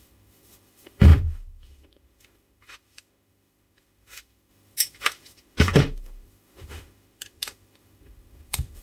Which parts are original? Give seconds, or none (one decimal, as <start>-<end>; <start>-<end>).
none